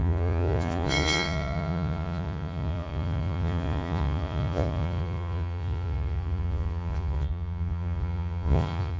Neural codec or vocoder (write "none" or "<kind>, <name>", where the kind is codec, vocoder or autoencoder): vocoder, Vocos